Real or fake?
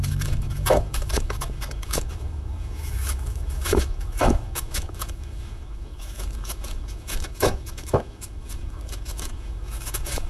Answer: fake